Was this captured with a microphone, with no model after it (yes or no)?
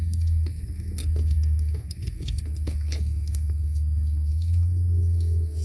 no